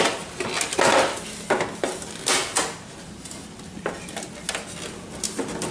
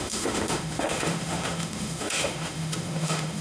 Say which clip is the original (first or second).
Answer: first